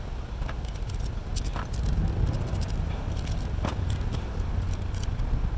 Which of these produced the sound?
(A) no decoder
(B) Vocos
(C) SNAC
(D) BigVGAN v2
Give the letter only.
A